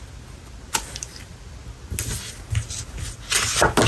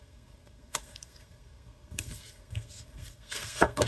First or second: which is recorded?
first